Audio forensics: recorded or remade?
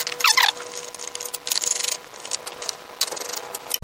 recorded